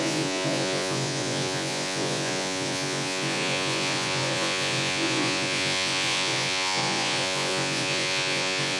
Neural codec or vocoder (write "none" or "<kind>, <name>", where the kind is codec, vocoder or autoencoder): vocoder, Vocos